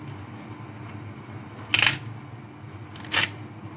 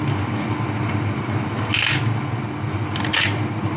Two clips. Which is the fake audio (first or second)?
second